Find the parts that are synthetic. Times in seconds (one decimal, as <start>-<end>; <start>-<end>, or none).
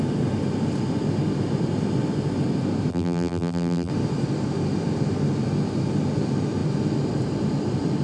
2.9-3.9